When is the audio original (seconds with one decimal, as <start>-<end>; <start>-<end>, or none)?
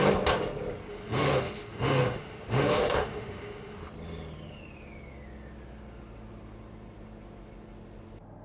0.0-0.9; 3.8-8.4